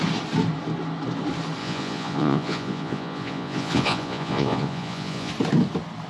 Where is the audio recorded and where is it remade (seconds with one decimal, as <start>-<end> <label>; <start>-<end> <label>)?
0.0-1.6 recorded; 1.6-5.3 remade; 5.3-6.1 recorded